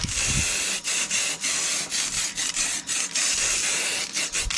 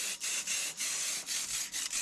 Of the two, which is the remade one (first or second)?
second